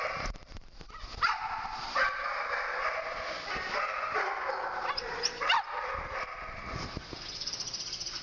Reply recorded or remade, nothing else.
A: remade